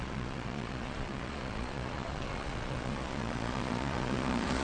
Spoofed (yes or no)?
yes